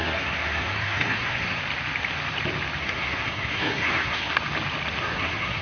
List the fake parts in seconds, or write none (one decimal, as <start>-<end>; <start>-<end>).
0.0-1.6; 2.8-4.4; 5.0-5.6